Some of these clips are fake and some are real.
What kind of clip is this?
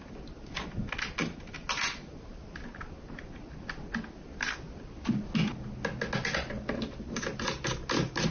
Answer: real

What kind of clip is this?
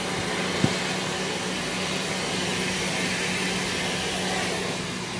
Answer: real